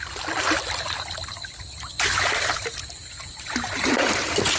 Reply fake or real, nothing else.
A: real